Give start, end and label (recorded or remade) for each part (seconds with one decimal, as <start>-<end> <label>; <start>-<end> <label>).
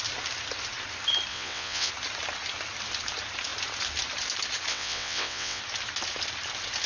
0.0-1.3 recorded; 1.3-1.9 remade; 1.9-4.7 recorded; 4.7-5.6 remade; 5.6-6.9 recorded